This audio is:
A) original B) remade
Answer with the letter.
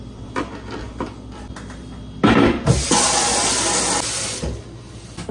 A